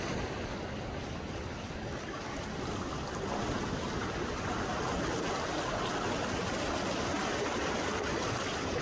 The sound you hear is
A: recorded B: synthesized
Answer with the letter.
A